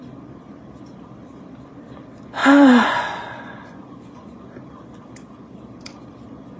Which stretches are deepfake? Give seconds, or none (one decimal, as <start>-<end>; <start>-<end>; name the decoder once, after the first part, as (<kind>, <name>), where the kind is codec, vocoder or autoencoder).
2.4-4.4 (vocoder, Vocos)